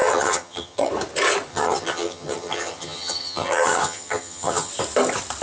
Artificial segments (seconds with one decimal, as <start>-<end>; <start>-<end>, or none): 0.0-0.9; 1.5-4.7